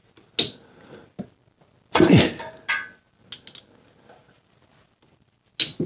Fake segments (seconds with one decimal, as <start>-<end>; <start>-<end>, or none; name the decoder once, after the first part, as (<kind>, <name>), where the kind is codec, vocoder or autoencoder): none